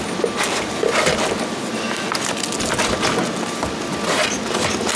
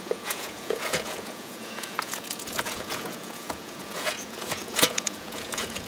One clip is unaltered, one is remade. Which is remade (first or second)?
second